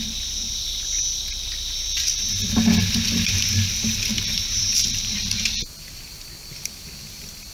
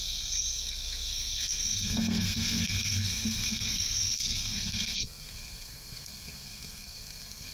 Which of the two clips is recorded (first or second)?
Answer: first